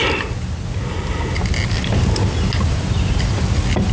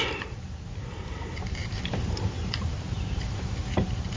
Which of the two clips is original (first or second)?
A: first